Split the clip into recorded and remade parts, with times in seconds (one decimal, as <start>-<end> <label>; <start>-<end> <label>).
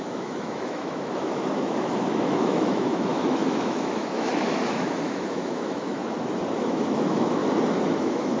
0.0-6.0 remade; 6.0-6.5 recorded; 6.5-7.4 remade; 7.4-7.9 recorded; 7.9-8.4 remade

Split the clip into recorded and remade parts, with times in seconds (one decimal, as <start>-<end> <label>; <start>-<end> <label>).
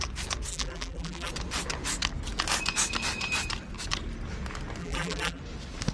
0.0-0.5 recorded; 0.5-1.3 remade; 1.3-4.8 recorded; 4.8-5.4 remade; 5.4-5.9 recorded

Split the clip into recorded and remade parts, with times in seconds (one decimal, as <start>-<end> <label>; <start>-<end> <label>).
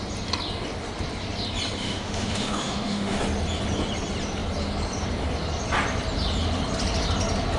0.0-1.8 recorded; 1.8-3.2 remade; 3.2-7.6 recorded